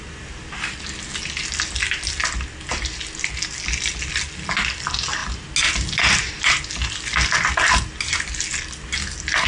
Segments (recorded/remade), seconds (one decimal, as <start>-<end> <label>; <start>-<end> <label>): 0.0-9.5 recorded